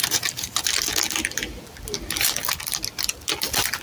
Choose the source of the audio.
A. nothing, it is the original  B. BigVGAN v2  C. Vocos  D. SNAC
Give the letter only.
A